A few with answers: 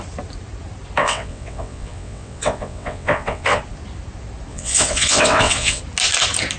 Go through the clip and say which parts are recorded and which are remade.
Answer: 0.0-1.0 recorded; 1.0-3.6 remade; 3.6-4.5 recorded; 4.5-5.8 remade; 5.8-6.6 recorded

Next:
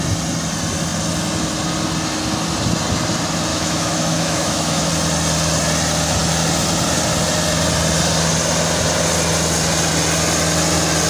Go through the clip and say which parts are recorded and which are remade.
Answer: 0.0-3.5 recorded; 3.5-4.9 remade; 4.9-11.1 recorded

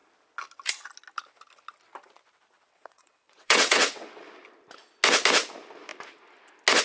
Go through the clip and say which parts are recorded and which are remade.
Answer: 0.0-2.6 recorded; 2.6-4.2 remade; 4.2-6.8 recorded

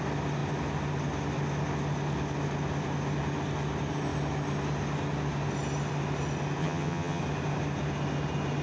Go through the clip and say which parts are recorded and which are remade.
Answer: 0.0-6.6 recorded; 6.6-7.2 remade; 7.2-8.6 recorded

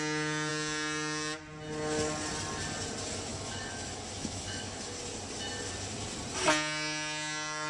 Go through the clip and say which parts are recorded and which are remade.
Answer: 0.0-3.3 recorded; 3.3-4.9 remade; 4.9-7.7 recorded

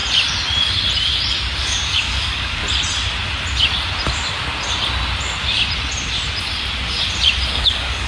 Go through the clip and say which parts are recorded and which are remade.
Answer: 0.0-1.6 recorded; 1.6-2.6 remade; 2.6-7.5 recorded; 7.5-8.1 remade

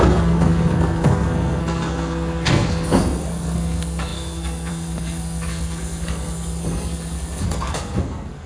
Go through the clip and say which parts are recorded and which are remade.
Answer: 0.0-8.5 remade

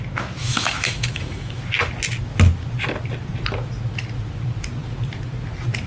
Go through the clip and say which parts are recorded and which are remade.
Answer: 0.0-0.4 recorded; 0.4-1.6 remade; 1.6-5.9 recorded